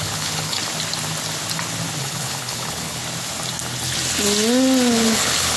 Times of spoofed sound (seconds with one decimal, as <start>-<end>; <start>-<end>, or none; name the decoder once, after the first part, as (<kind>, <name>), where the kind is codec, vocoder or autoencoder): 0.0-0.6 (codec, HILCodec); 2.0-3.0; 4.9-5.6